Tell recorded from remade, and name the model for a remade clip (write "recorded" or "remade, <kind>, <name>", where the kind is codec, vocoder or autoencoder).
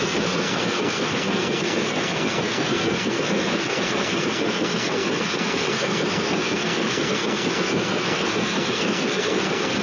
remade, codec, SNAC